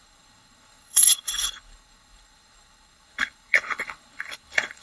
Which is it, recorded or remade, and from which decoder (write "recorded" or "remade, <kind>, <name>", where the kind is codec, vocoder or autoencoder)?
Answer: remade, codec, HILCodec